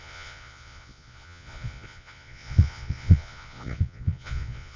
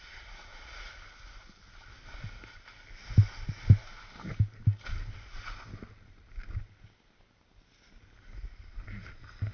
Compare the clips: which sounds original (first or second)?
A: second